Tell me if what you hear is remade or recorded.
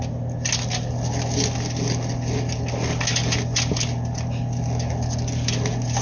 recorded